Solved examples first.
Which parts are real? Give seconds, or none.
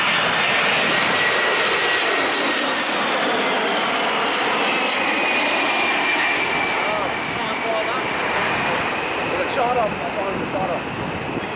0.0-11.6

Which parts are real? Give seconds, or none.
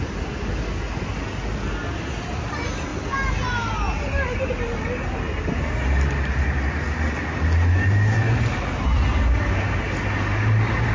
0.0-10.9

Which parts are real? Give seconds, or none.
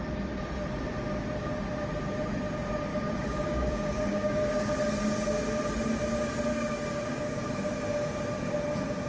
0.0-2.9; 4.8-6.5; 7.4-9.1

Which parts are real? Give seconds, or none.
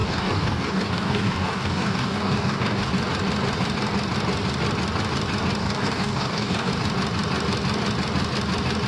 2.9-5.6; 6.7-8.9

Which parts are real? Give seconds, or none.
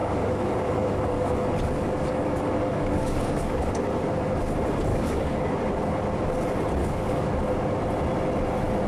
3.7-4.9; 5.5-6.8; 7.3-8.9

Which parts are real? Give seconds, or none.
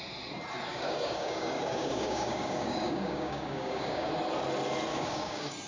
0.0-0.7; 4.1-4.9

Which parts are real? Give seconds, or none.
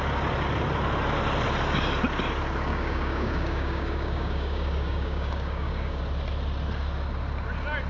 0.0-2.7; 6.0-7.9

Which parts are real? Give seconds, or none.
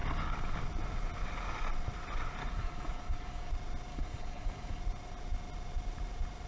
0.0-2.4; 3.5-3.9; 4.8-6.5